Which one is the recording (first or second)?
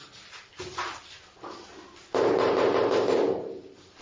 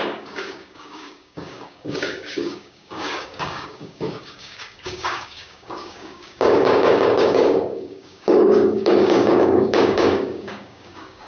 first